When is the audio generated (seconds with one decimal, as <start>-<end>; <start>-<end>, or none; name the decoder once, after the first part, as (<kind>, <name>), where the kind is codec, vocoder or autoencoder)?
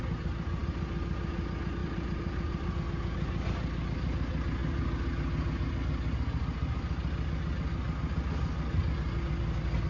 1.8-2.7 (vocoder, BigVGAN v2)